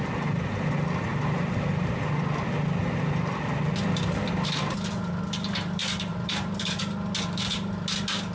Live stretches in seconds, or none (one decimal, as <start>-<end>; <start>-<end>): 0.0-6.1; 6.8-8.3